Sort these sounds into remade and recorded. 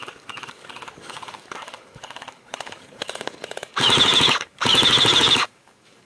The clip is remade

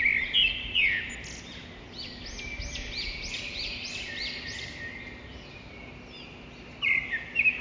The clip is recorded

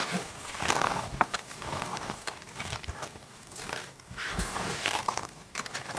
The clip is remade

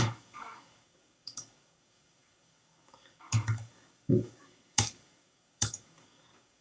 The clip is remade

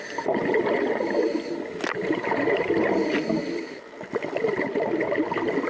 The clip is recorded